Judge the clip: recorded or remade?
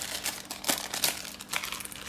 recorded